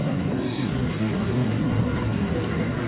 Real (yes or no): no